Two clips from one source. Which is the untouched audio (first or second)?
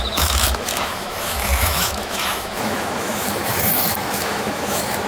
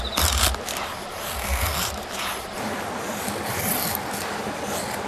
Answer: second